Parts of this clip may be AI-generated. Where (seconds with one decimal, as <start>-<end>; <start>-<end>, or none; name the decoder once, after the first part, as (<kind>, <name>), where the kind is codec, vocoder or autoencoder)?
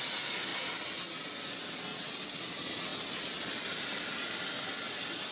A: 1.9-2.4 (vocoder, WaveNeXt)